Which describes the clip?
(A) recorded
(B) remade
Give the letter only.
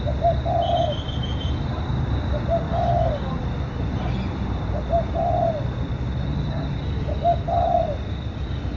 A